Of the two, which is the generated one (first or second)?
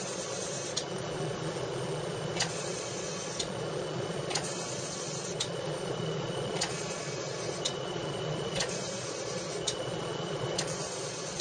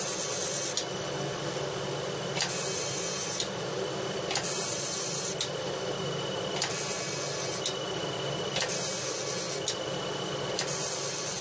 first